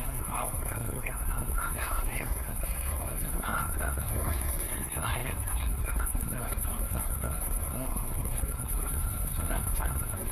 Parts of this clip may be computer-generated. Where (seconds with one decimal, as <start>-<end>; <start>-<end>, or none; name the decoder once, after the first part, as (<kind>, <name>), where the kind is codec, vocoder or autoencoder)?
0.0-10.3 (codec, SNAC)